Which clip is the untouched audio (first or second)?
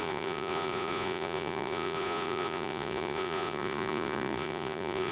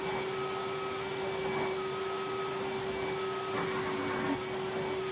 second